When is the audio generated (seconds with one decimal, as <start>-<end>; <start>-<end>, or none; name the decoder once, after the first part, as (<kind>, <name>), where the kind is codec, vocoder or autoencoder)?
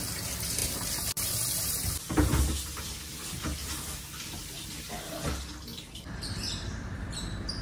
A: 0.6-5.1 (vocoder, BigVGAN v2); 5.7-7.6